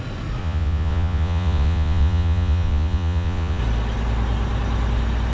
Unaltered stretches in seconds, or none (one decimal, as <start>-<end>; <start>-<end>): 0.0-0.4; 3.6-5.3

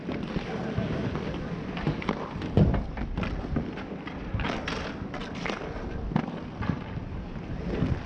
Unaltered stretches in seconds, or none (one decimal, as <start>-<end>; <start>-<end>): 0.0-8.1